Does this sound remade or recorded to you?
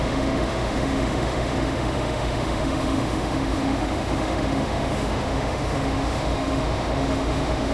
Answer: remade